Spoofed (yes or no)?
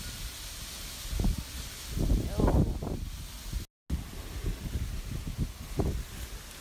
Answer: no